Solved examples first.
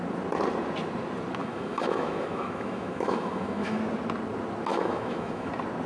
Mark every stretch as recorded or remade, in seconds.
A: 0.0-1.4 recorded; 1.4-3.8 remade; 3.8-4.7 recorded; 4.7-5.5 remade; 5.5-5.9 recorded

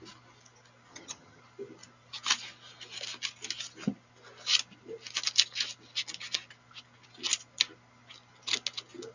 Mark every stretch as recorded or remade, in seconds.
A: 0.0-0.9 recorded; 0.9-1.4 remade; 1.4-9.1 recorded

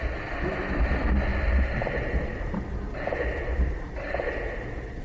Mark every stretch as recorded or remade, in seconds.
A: 0.0-5.0 recorded

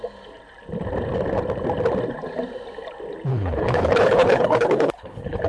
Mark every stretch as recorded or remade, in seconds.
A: 0.0-3.3 recorded; 3.3-5.5 remade

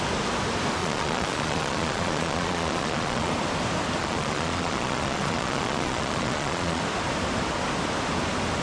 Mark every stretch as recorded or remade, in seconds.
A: 0.0-0.8 recorded; 0.8-3.3 remade; 3.3-4.0 recorded; 4.0-6.8 remade; 6.8-8.6 recorded

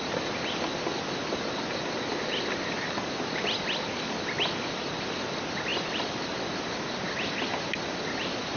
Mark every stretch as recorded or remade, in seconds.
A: 0.0-8.6 recorded